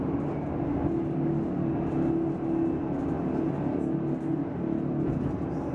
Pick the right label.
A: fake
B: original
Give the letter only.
B